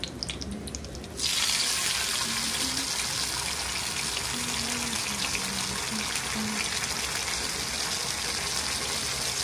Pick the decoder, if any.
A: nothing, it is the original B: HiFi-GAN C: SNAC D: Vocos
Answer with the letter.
A